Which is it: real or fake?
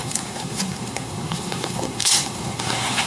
fake